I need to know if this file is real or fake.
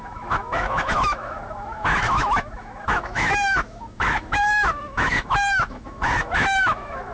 fake